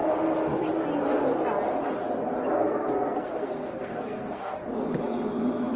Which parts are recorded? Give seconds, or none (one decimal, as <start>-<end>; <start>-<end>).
0.0-2.6; 4.6-5.8

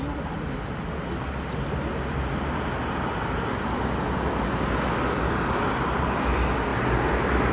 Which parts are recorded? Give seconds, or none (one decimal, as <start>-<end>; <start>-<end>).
0.0-7.5

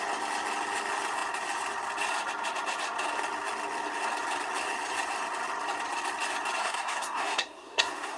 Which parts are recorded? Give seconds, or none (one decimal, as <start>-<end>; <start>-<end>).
0.0-6.6

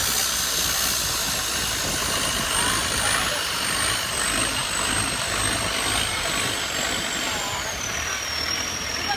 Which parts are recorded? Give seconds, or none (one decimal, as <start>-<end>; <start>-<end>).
0.0-9.2